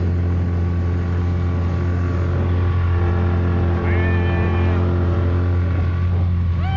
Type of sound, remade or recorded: recorded